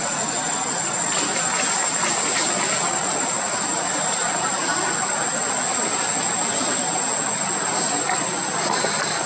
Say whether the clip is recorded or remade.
recorded